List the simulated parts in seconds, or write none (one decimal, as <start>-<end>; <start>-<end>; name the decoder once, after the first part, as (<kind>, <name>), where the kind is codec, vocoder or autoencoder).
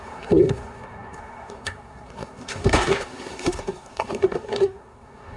0.0-5.4 (codec, SNAC)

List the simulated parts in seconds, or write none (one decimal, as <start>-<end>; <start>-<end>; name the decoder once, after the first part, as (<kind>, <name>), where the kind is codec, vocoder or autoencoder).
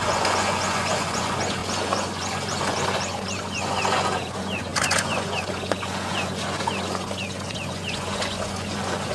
0.0-9.1 (vocoder, Vocos)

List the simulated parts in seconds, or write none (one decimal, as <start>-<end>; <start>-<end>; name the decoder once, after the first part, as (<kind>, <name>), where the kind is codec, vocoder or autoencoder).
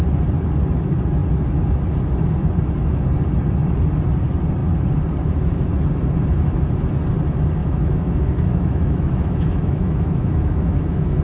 7.6-11.2 (autoencoder, DAC-VAE)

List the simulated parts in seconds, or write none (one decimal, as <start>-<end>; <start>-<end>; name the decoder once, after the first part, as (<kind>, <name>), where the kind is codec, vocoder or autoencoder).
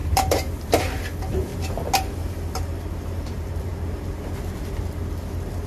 0.0-1.5 (vocoder, BigVGAN v2); 2.9-3.7